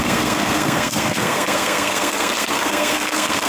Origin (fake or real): fake